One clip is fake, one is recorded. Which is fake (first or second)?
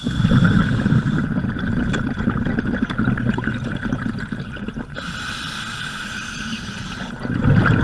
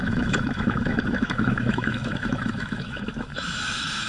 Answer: second